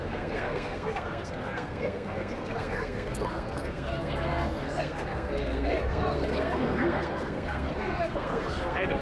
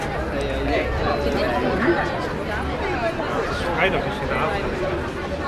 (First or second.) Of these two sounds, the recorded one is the second